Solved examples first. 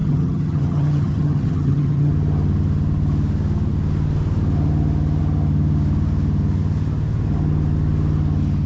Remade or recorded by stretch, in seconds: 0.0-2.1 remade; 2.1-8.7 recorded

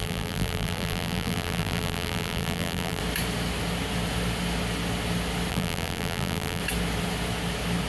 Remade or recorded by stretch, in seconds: 0.0-3.0 remade; 3.0-5.5 recorded; 5.5-6.6 remade; 6.6-7.9 recorded

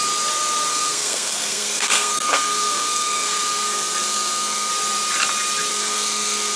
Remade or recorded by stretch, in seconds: 0.0-0.7 recorded; 0.7-4.7 remade; 4.7-5.7 recorded; 5.7-6.6 remade